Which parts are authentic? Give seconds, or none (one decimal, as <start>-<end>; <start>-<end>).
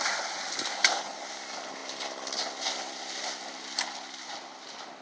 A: 0.0-5.0